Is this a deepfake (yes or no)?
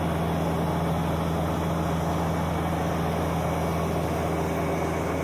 no